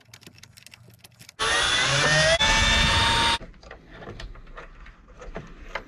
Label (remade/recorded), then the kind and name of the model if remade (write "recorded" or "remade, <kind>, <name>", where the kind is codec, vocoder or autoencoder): recorded